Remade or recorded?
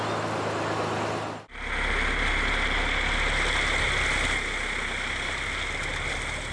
recorded